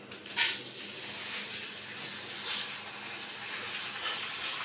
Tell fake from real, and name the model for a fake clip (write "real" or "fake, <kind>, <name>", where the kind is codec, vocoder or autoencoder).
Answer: real